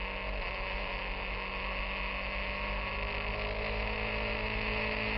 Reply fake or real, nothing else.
real